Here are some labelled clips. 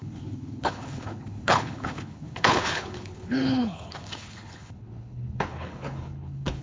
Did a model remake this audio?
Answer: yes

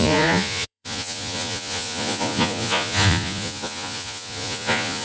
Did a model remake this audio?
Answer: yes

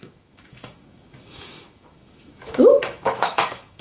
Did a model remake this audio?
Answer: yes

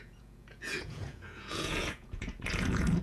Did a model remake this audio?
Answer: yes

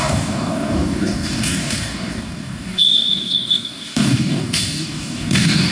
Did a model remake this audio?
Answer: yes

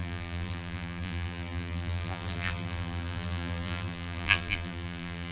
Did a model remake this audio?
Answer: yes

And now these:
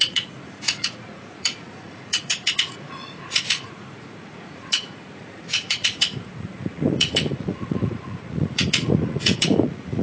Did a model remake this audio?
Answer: yes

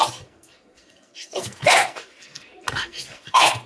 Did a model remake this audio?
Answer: yes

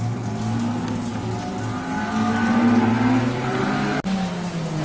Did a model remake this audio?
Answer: no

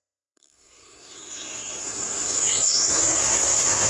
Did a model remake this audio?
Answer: yes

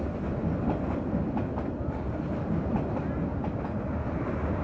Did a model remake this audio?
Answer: no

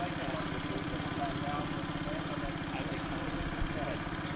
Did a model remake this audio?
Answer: no